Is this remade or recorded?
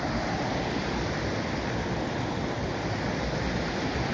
recorded